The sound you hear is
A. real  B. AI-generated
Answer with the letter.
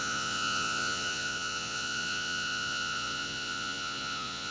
B